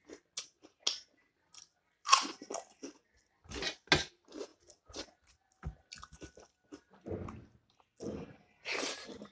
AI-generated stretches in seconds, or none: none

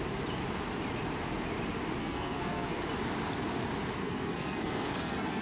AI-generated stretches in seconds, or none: 2.0-2.8 (codec, SNAC); 4.0-5.4

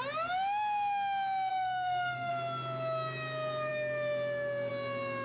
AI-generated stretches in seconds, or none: 1.5-2.3 (codec, SNAC)

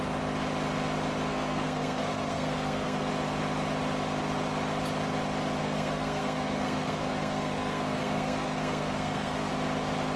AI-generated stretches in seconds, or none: 1.3-3.1 (codec, SNAC); 5.6-9.5

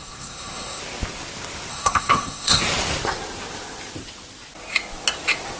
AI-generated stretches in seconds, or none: 0.0-0.8 (codec, SNAC); 1.7-2.6

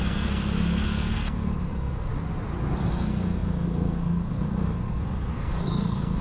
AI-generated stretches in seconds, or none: 0.0-2.1 (codec, SNAC); 2.9-6.2

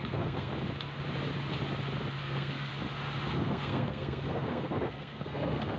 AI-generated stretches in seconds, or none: 0.0-0.5 (codec, SNAC); 2.2-2.7; 3.3-5.8

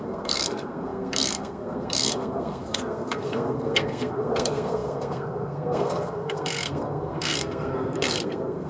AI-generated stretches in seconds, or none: 0.0-8.7 (codec, SNAC)